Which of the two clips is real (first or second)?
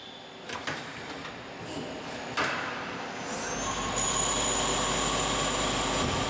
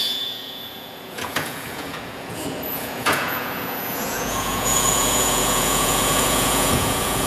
first